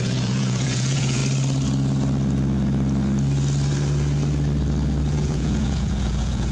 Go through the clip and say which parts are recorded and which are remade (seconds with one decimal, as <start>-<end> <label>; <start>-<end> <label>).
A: 0.0-1.2 remade; 1.2-5.1 recorded; 5.1-6.5 remade